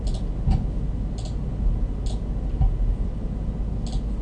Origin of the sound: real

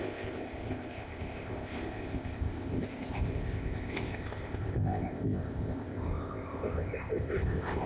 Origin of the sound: fake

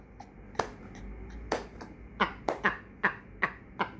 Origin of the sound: real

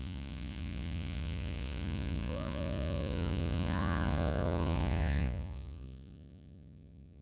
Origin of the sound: fake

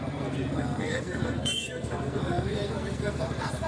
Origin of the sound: fake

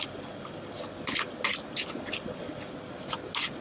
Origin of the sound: real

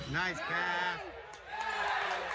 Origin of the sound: real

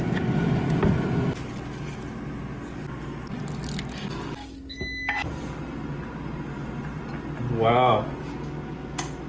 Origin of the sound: real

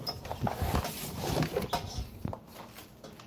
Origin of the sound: fake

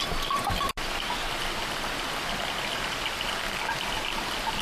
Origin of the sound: real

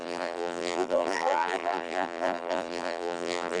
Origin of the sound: fake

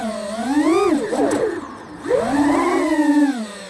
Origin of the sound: real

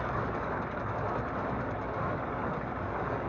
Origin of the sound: fake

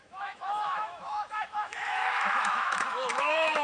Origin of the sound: fake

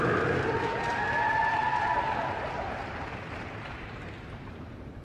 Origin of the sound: fake